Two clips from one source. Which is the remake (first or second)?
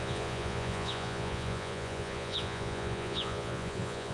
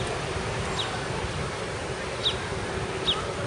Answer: first